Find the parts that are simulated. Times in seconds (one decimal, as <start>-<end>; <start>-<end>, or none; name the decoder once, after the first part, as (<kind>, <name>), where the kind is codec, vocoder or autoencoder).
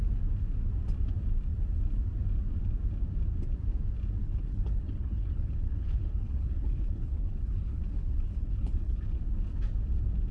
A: 4.2-9.2 (codec, HILCodec)